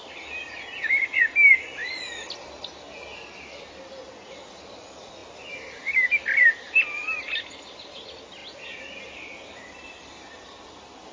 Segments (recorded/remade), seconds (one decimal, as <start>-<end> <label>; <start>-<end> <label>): 0.0-1.8 remade; 1.8-4.5 recorded; 4.5-8.4 remade; 8.4-9.6 recorded; 9.6-11.1 remade